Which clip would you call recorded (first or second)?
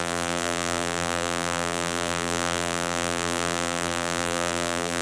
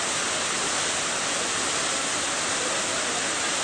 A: second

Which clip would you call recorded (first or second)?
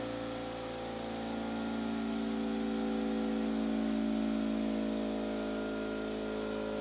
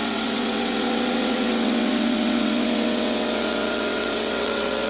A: first